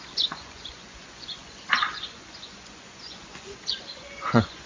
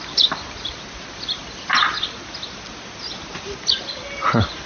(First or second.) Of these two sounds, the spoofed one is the first